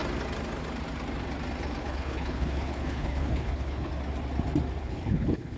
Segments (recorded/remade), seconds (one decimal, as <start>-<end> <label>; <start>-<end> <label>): 0.0-1.8 recorded; 1.8-3.9 remade; 3.9-4.8 recorded; 4.8-5.6 remade